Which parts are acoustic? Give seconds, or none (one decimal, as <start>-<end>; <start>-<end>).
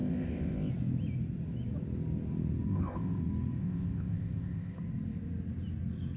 0.7-2.7; 3.2-3.6; 4.8-6.2